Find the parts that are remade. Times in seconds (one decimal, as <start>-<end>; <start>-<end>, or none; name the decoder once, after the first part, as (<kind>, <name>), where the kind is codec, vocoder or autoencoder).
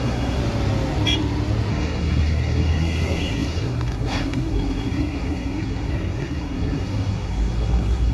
0.0-0.4 (codec, SNAC); 1.7-8.1